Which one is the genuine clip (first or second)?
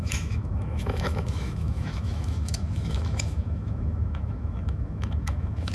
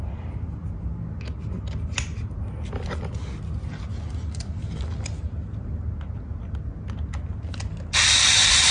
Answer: second